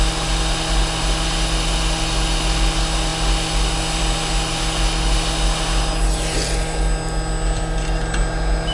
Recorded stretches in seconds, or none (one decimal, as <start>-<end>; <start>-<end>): 0.0-8.7